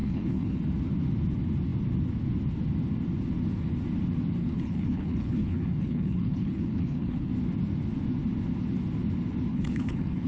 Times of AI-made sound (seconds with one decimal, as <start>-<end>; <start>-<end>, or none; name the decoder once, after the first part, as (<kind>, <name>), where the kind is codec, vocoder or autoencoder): 0.0-0.6 (codec, HILCodec); 4.4-7.3; 9.5-10.3